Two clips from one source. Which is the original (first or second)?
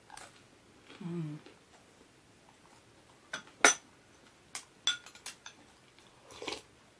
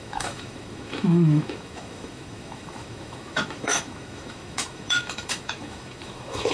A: first